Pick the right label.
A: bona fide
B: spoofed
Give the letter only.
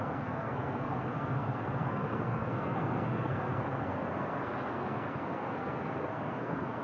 B